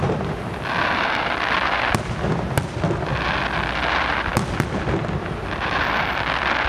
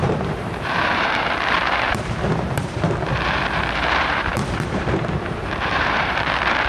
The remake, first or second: second